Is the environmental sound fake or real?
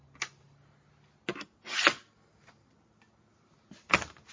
real